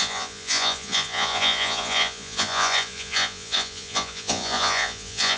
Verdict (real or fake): fake